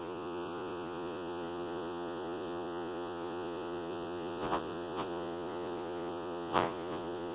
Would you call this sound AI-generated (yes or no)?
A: yes